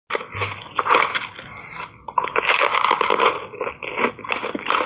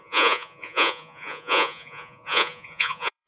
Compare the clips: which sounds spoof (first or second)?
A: second